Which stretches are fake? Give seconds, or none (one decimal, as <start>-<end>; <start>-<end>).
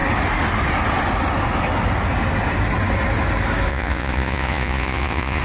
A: 3.7-5.4